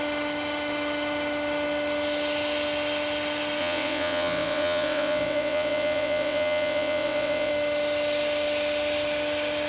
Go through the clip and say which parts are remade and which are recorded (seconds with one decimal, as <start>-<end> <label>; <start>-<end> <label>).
0.0-3.6 recorded; 3.6-7.5 remade; 7.5-9.7 recorded